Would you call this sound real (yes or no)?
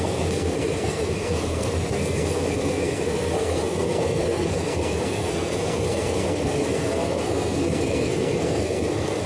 no